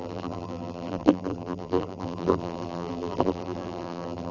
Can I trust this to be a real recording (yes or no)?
no